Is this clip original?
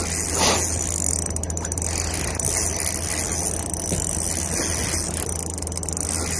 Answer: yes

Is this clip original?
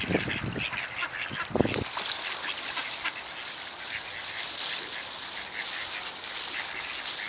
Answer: yes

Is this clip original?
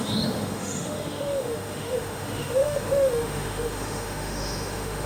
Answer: no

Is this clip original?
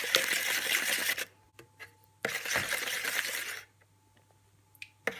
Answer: yes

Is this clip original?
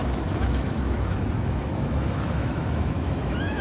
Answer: no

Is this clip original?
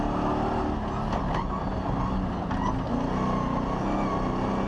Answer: yes